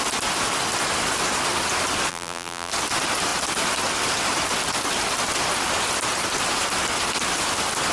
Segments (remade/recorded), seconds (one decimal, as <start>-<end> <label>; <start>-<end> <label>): 0.0-2.1 recorded; 2.1-2.7 remade; 2.7-7.9 recorded